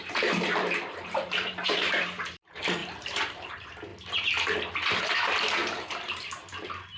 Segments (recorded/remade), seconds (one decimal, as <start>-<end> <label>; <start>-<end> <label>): 0.0-3.9 remade; 3.9-5.0 recorded; 5.0-7.0 remade